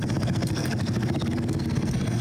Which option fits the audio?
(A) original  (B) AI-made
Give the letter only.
B